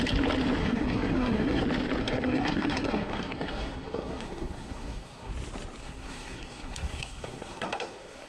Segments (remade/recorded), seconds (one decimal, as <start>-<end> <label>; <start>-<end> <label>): 0.0-0.6 recorded; 0.6-1.6 remade; 1.6-2.0 recorded; 2.0-5.3 remade; 5.3-5.8 recorded; 5.8-8.3 remade